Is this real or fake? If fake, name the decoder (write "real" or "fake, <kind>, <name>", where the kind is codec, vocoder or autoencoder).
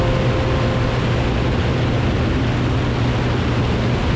real